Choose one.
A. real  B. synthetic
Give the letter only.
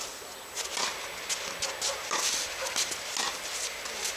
A